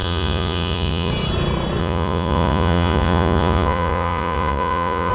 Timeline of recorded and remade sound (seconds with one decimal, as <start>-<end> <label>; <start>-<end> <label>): 0.0-1.1 remade; 1.1-1.8 recorded; 1.8-5.1 remade

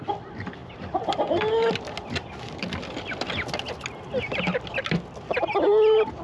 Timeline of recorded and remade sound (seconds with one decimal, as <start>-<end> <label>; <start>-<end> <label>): 0.0-6.2 recorded

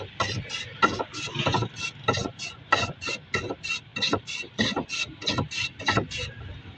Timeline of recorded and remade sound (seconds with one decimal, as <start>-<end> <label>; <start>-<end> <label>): 0.0-2.2 recorded; 2.2-3.4 remade; 3.4-6.8 recorded

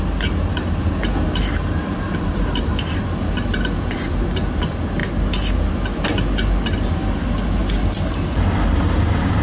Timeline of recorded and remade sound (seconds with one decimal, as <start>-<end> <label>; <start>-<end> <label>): 0.0-9.4 recorded

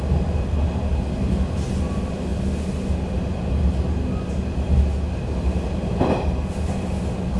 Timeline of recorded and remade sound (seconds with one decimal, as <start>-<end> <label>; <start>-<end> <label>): 0.0-7.4 recorded

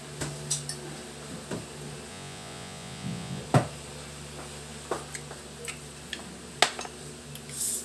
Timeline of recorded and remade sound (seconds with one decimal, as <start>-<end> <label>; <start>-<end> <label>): 0.0-2.1 recorded; 2.1-3.4 remade; 3.4-7.8 recorded

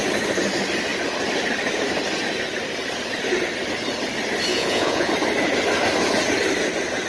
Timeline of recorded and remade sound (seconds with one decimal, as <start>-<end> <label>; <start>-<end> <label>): 0.0-4.5 recorded; 4.5-5.1 remade; 5.1-7.1 recorded

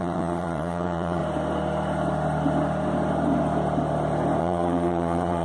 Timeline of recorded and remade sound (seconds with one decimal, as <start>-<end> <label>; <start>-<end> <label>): 0.0-1.2 remade; 1.2-4.4 recorded; 4.4-5.4 remade